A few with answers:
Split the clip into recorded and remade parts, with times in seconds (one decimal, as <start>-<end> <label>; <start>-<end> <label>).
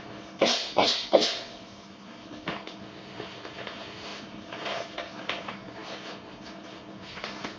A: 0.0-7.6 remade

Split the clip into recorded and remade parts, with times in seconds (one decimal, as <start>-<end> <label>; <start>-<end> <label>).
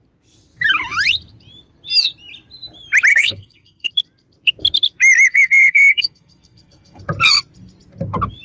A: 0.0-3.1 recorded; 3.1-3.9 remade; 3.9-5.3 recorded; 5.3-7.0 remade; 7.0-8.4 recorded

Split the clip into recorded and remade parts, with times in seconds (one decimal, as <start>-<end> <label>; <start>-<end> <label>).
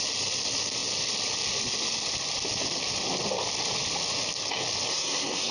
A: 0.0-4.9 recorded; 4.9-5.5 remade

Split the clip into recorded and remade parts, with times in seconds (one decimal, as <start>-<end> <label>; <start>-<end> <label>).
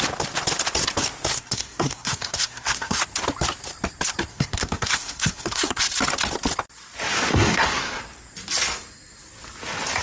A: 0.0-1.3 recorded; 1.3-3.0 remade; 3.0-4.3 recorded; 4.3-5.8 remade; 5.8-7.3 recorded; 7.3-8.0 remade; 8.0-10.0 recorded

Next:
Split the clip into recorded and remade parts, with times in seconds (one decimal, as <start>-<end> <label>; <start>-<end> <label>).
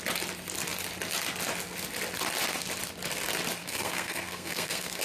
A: 0.0-3.6 recorded; 3.6-5.0 remade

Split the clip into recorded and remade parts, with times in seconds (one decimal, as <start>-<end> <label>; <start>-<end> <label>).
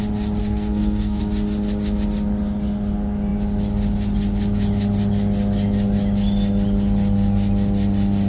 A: 0.0-0.4 recorded; 0.4-1.2 remade; 1.2-8.3 recorded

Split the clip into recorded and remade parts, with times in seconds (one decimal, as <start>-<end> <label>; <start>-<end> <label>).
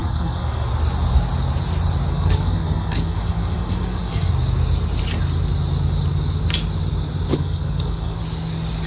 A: 0.0-0.7 remade; 0.7-2.1 recorded; 2.1-4.3 remade; 4.3-7.3 recorded; 7.3-8.2 remade; 8.2-8.9 recorded